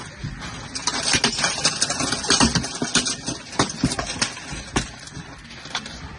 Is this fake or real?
real